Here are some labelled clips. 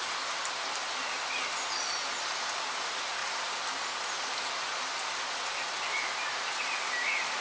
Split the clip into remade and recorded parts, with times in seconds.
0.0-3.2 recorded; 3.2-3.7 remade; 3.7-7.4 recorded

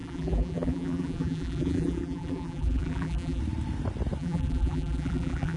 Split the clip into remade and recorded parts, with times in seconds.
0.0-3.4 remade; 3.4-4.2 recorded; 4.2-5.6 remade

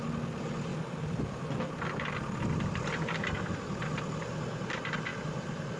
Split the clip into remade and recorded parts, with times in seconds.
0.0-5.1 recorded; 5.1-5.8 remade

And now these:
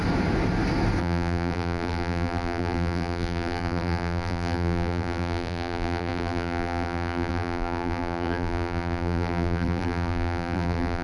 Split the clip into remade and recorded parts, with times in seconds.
0.0-1.0 recorded; 1.0-11.0 remade

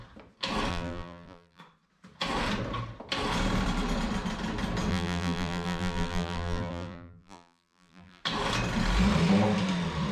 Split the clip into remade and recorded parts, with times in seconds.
0.0-0.7 recorded; 0.7-1.6 remade; 1.6-4.9 recorded; 4.9-8.2 remade; 8.2-10.1 recorded

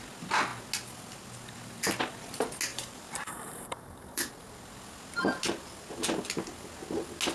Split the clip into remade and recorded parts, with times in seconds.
0.0-2.7 recorded; 2.7-4.3 remade; 4.3-7.3 recorded

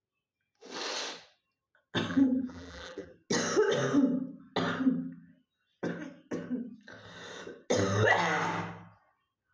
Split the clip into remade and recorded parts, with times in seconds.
0.0-2.1 recorded; 2.1-3.1 remade; 3.1-9.5 recorded